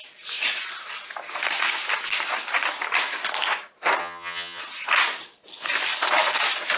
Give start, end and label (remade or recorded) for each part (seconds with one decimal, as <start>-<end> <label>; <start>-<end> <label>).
0.0-4.0 recorded; 4.0-4.6 remade; 4.6-6.8 recorded